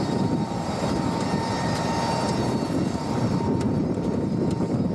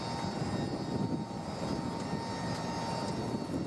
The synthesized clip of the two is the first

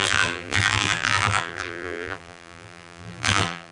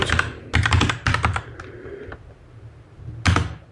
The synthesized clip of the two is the first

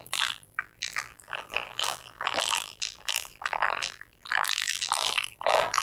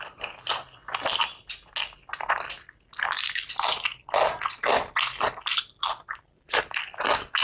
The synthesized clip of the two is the first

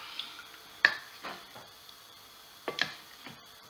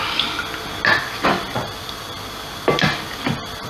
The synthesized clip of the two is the first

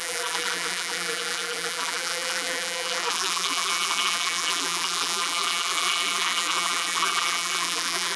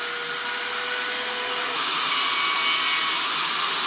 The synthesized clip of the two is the first